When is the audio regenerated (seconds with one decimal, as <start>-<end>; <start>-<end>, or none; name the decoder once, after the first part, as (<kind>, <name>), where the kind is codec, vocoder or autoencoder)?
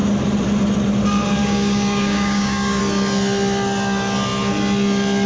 1.4-2.8 (codec, DAC)